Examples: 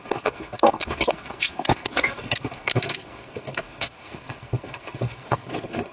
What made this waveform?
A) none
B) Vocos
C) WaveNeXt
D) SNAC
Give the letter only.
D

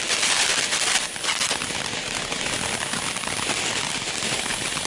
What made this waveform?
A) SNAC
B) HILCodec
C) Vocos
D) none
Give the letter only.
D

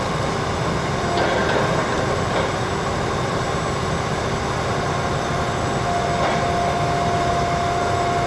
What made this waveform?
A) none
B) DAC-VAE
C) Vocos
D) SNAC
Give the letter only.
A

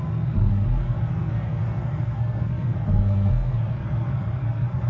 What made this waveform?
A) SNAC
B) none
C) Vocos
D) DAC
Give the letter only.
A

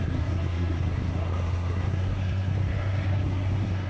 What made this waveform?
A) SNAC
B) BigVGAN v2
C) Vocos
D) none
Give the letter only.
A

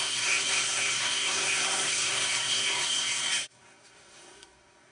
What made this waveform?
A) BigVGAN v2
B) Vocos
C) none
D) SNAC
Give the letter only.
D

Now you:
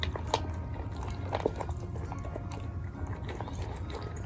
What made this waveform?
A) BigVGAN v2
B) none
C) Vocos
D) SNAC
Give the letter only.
B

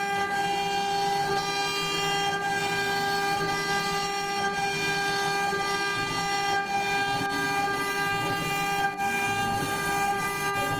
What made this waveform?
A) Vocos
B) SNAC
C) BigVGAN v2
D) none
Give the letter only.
D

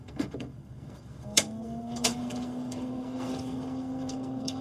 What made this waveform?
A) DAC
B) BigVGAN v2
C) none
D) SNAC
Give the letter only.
D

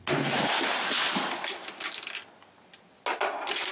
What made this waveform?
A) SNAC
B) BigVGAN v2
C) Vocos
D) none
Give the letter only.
D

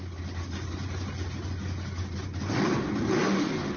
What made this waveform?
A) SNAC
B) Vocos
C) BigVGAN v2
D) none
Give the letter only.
D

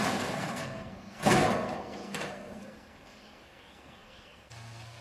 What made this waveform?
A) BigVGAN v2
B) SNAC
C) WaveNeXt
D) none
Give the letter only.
B